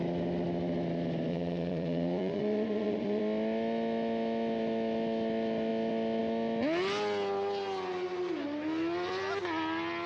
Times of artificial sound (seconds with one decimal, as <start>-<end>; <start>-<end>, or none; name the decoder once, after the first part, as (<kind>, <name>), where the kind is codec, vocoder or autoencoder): 1.3-3.2 (vocoder, Vocos)